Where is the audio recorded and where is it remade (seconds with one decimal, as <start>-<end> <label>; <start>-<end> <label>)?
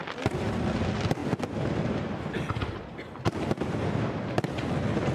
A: 0.0-5.1 recorded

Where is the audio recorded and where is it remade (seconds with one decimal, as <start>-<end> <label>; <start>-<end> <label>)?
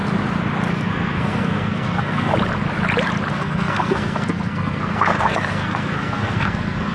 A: 0.0-0.7 recorded; 0.7-2.3 remade; 2.3-3.3 recorded; 3.3-6.9 remade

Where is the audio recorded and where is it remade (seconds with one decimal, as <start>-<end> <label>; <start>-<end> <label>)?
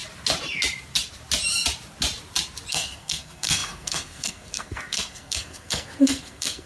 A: 0.0-2.7 recorded; 2.7-6.7 remade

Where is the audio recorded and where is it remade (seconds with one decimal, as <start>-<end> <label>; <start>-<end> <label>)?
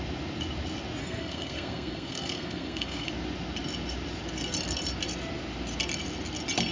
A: 0.0-1.0 recorded; 1.0-3.1 remade; 3.1-6.7 recorded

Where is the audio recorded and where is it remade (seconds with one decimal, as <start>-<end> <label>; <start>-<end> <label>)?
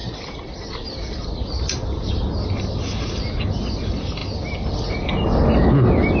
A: 0.0-6.2 recorded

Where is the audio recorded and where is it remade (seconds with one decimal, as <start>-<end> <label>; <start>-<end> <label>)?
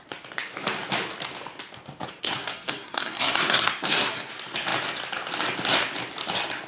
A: 0.0-2.2 recorded; 2.2-4.3 remade; 4.3-6.7 recorded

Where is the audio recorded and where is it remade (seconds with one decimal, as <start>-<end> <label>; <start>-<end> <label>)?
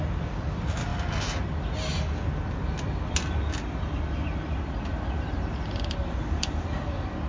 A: 0.0-7.3 recorded